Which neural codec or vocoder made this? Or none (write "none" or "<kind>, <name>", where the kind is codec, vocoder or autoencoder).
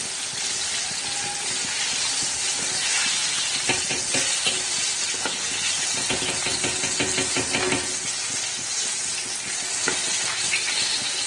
none